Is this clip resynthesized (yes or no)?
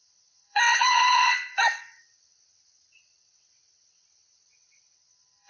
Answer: yes